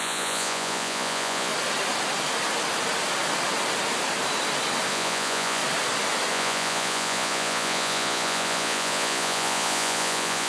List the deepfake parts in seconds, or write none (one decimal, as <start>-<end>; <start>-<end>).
0.0-1.5; 4.9-5.6; 6.3-10.5